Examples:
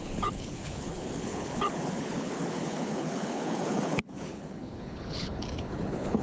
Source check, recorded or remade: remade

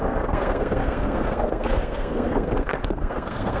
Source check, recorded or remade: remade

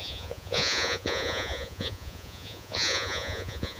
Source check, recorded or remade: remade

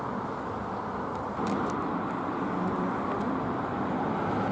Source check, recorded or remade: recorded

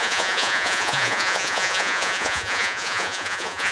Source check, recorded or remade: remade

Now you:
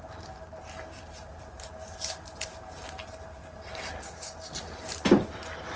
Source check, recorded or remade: recorded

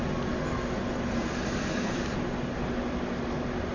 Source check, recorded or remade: recorded